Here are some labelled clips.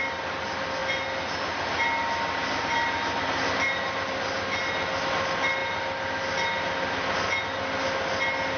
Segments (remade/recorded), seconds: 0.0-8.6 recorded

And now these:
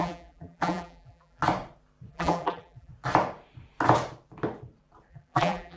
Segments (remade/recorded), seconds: 0.0-1.4 remade; 1.4-2.1 recorded; 2.1-2.9 remade; 2.9-5.1 recorded; 5.1-5.8 remade

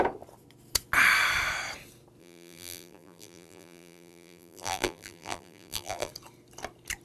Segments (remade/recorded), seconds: 0.0-2.2 recorded; 2.2-6.1 remade; 6.1-7.0 recorded

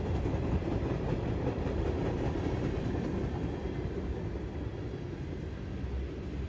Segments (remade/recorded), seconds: 0.0-0.6 recorded; 0.6-3.1 remade; 3.1-6.5 recorded